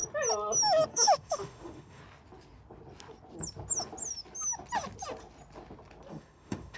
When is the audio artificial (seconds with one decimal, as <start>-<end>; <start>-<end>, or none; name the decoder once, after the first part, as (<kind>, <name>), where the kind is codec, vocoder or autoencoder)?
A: 0.9-2.0 (autoencoder, DAC-VAE); 6.1-6.8